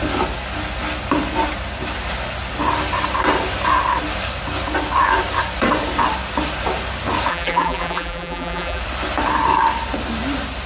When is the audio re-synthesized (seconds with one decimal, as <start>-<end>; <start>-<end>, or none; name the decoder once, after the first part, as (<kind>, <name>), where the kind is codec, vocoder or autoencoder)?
7.3-8.8 (vocoder, BigVGAN v2)